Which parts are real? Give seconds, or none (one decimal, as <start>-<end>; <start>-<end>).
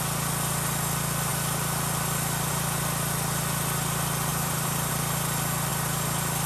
0.0-4.3; 4.9-6.5